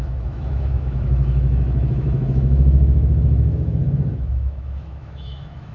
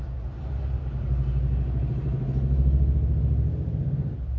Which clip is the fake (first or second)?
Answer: first